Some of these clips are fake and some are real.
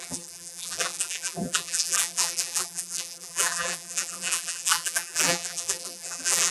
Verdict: fake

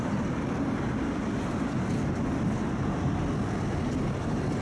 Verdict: real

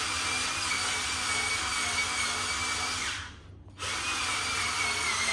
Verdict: real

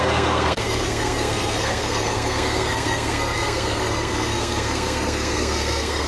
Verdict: fake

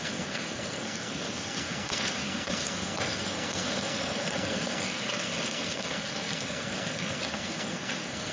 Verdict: fake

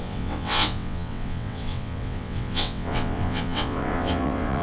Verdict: fake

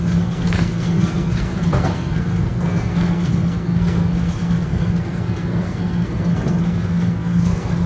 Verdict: fake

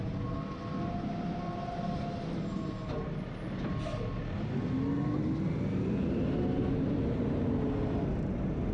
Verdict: real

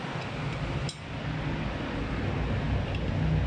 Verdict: real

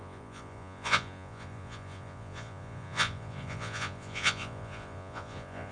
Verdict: fake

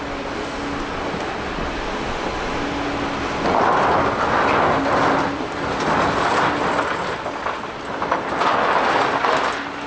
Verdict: real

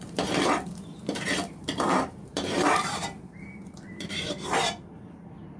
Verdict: fake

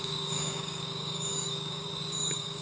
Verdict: fake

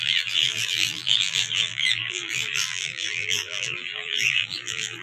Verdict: fake